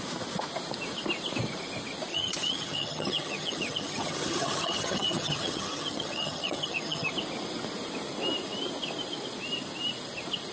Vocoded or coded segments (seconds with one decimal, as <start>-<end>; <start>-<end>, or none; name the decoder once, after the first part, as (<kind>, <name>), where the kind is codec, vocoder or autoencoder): 2.1-7.1 (vocoder, HiFi-GAN)